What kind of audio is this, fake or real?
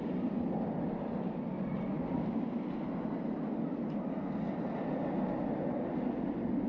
real